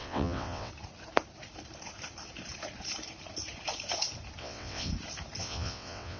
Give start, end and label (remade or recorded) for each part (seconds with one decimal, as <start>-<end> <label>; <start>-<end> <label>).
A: 0.0-0.7 remade; 0.7-4.4 recorded; 4.4-4.9 remade; 4.9-5.4 recorded; 5.4-6.2 remade